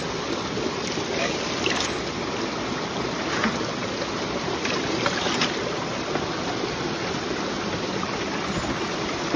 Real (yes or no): yes